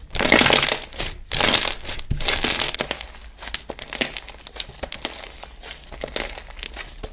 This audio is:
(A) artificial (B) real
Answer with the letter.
B